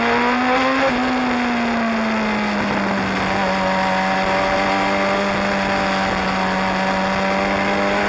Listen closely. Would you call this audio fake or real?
real